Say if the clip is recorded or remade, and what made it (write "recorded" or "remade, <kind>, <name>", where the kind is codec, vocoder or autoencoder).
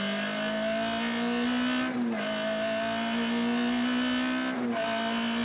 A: recorded